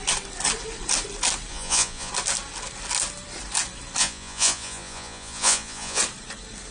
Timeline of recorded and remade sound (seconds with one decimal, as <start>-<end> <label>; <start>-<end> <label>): 0.0-1.5 recorded; 1.5-2.1 remade; 2.1-4.0 recorded; 4.0-6.0 remade; 6.0-6.7 recorded